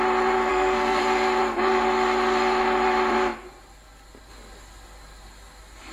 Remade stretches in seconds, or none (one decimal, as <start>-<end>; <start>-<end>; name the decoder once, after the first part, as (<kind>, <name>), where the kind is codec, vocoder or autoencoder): 0.5-1.0 (codec, SNAC)